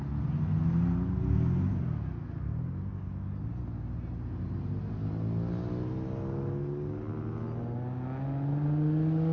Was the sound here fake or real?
real